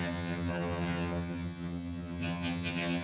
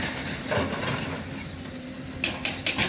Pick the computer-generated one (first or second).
first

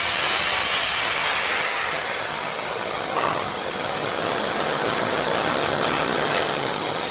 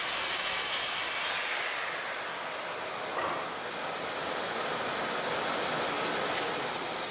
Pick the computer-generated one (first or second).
first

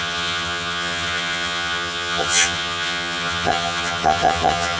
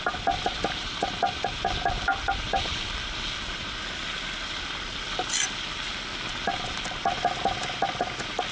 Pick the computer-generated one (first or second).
first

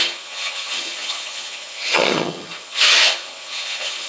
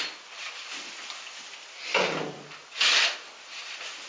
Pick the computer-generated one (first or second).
first